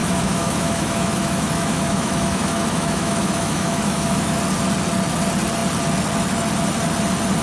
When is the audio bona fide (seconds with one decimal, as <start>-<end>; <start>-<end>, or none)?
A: 4.4-7.4